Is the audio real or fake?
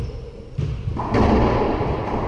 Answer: real